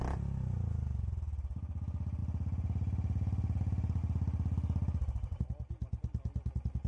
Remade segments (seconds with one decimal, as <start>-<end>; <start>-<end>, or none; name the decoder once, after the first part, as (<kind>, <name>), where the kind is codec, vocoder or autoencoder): none